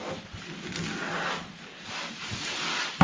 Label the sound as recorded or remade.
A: recorded